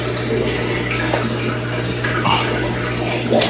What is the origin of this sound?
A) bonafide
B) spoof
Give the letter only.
A